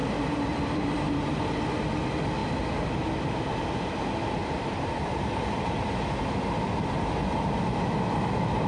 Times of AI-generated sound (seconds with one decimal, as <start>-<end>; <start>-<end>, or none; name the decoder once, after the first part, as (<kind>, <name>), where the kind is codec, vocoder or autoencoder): 0.0-1.6 (vocoder, BigVGAN v2); 4.4-5.9